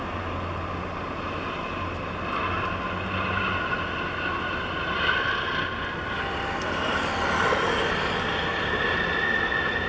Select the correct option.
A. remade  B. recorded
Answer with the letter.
B